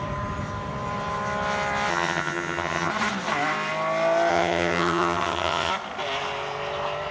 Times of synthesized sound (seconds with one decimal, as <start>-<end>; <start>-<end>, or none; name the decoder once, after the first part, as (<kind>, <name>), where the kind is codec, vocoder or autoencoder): 1.9-2.9 (vocoder, HiFi-GAN); 4.3-5.7